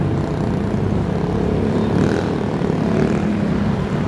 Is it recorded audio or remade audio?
remade